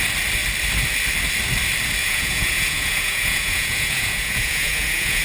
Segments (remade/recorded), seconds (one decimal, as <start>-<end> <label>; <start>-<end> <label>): 0.0-2.0 recorded; 2.0-5.2 remade